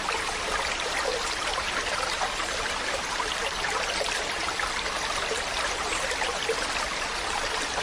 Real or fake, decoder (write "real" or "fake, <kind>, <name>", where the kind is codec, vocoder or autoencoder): real